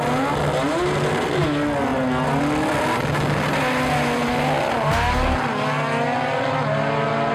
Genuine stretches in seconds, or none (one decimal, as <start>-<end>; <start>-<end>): 0.0-7.3